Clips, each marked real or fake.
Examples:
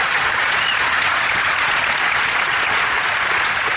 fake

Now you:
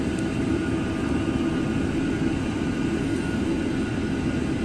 real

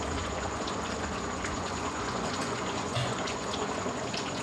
fake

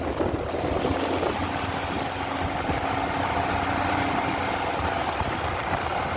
real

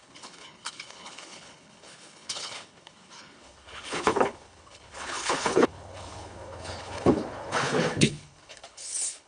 fake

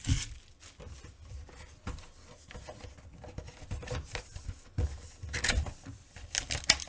real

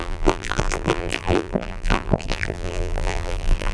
fake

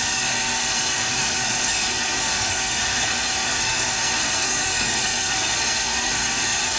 fake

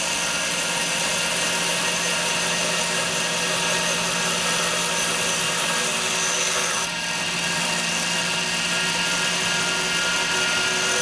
real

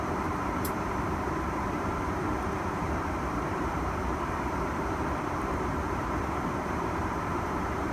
fake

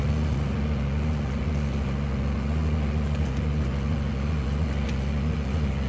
fake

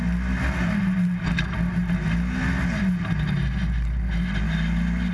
real